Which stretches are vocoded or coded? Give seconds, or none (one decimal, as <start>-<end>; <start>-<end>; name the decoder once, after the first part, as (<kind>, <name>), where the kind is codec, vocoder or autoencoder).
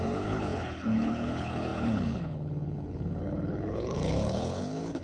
0.0-5.0 (codec, HILCodec)